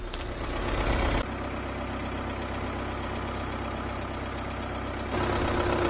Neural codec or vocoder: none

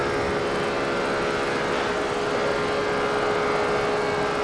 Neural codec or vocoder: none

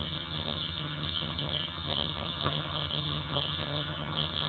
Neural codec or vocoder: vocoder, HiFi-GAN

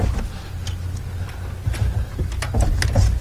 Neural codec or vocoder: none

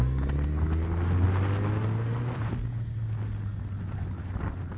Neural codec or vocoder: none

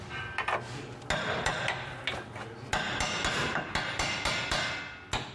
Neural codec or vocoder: none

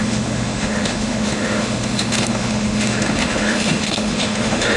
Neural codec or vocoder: autoencoder, DAC-VAE